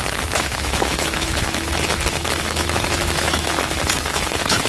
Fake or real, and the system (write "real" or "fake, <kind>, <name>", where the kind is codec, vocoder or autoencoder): fake, autoencoder, DAC-VAE